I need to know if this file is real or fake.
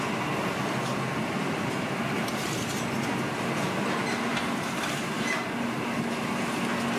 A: real